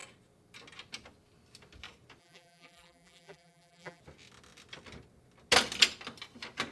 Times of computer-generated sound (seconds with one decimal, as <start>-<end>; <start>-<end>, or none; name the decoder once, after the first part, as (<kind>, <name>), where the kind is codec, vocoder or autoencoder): 2.2-4.0 (vocoder, BigVGAN v2)